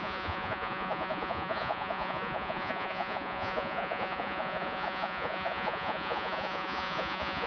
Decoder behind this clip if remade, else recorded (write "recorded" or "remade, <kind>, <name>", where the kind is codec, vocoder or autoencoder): remade, vocoder, Vocos